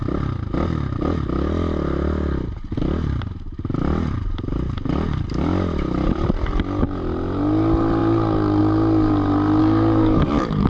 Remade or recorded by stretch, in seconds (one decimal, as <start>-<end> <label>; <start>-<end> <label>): 0.0-9.6 recorded; 9.6-10.7 remade